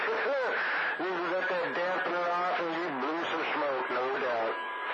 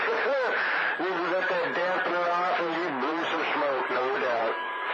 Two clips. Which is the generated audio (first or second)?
second